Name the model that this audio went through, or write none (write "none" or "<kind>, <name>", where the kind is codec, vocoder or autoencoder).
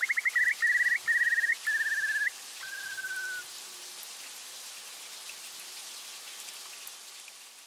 none